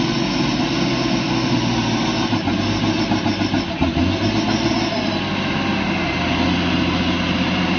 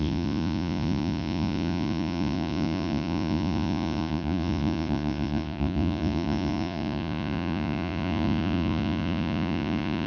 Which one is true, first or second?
first